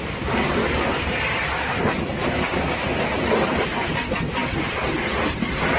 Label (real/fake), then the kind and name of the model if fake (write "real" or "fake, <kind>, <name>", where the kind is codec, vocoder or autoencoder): real